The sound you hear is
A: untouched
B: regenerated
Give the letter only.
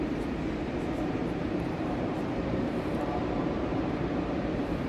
B